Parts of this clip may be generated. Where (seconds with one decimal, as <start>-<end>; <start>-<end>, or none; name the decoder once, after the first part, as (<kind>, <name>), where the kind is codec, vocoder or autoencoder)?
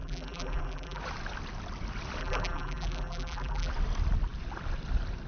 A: 0.0-1.0 (vocoder, BigVGAN v2); 2.2-3.7